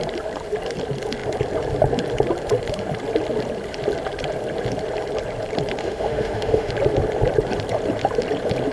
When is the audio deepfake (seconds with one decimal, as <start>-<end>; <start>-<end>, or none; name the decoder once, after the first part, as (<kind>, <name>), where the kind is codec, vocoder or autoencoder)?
5.8-6.7 (autoencoder, DAC-VAE)